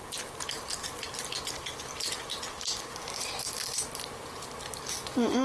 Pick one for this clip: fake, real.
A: real